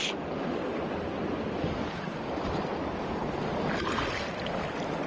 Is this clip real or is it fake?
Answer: real